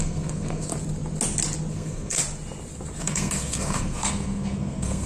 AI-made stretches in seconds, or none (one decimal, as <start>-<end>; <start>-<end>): 0.0-0.7; 1.7-2.2; 3.0-5.1